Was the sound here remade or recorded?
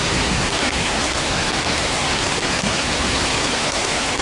remade